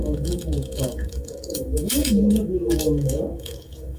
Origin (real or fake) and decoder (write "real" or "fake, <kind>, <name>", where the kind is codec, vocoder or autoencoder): fake, codec, DAC